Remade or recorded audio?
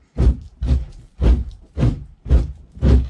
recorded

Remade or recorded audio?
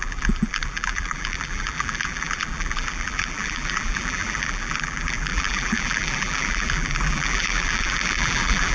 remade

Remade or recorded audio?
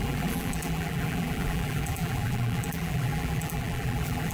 remade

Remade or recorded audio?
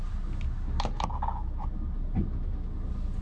recorded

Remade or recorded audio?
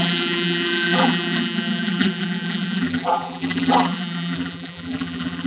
remade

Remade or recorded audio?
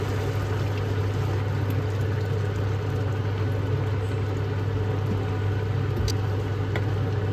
recorded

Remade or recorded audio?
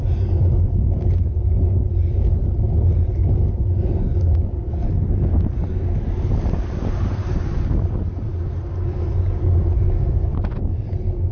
recorded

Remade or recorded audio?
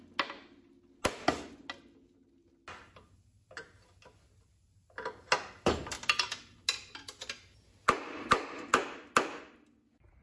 recorded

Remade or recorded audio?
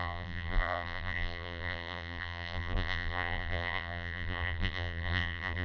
remade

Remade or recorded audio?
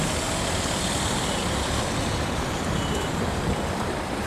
remade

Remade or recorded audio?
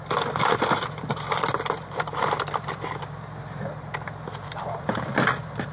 remade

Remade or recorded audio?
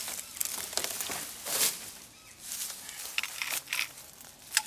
recorded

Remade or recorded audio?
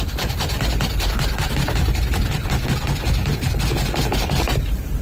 recorded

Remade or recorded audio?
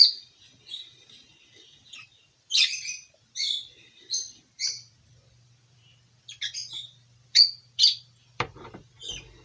remade